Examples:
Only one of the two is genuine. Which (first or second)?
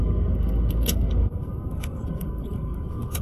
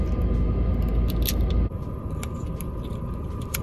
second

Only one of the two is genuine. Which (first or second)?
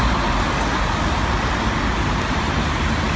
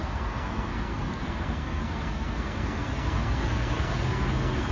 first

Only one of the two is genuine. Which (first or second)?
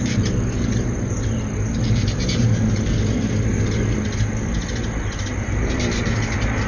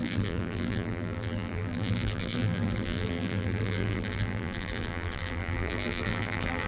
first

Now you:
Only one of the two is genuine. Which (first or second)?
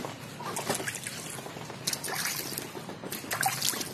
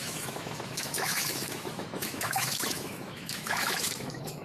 first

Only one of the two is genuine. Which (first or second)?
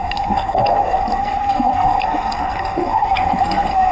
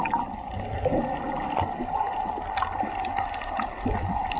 second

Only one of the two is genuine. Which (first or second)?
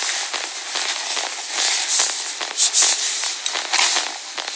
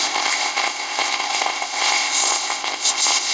first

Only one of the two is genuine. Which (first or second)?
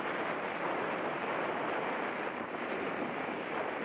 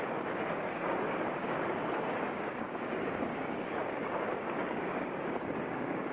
first